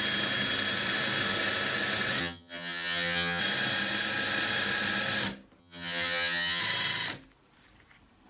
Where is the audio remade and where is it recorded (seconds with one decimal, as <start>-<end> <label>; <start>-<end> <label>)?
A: 0.0-2.2 recorded; 2.2-3.4 remade; 3.4-5.6 recorded; 5.6-6.6 remade; 6.6-8.3 recorded